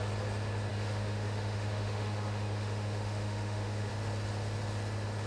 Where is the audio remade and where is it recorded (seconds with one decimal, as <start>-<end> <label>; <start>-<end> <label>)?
0.0-0.7 recorded; 0.7-3.9 remade; 3.9-5.3 recorded